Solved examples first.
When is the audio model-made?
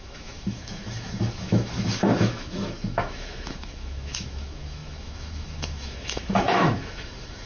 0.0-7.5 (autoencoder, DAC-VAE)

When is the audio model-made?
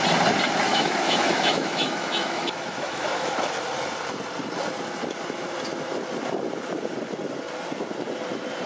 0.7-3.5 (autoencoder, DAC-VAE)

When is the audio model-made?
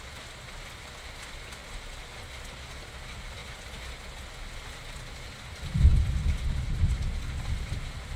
none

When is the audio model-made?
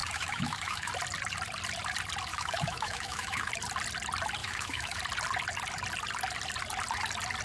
0.0-0.9 (autoencoder, DAC-VAE); 2.3-3.5; 4.4-5.0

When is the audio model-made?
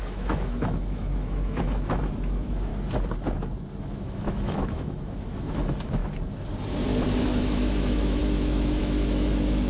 0.0-2.7 (autoencoder, DAC-VAE); 3.8-6.0; 7.2-9.7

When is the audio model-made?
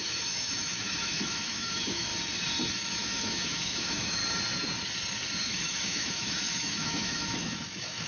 0.0-2.1 (autoencoder, DAC-VAE); 2.9-4.2; 5.4-8.1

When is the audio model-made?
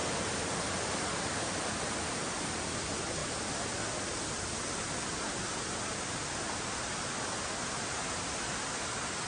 none